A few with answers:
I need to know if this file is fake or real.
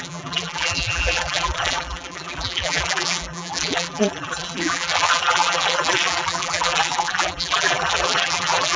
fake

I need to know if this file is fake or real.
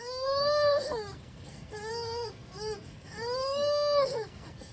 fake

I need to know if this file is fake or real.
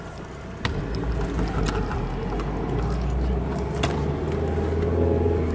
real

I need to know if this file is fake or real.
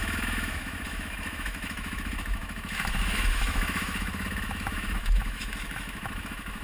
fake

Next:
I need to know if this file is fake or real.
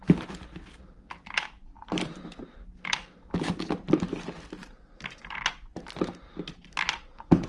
real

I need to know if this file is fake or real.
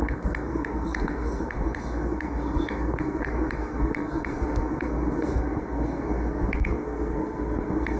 fake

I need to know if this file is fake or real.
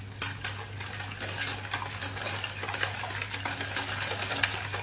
real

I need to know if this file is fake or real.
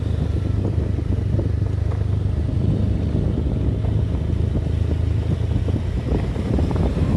real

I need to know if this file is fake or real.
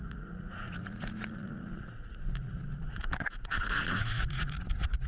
fake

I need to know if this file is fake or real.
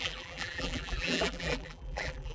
fake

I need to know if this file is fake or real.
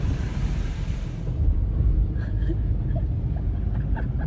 fake